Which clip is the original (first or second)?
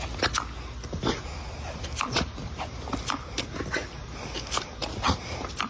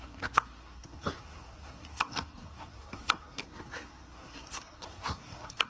first